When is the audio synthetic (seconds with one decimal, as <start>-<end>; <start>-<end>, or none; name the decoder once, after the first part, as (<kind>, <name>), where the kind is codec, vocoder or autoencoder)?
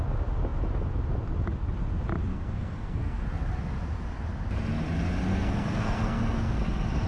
2.3-3.2 (codec, SNAC); 5.3-6.6